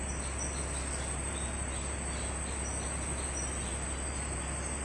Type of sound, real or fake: real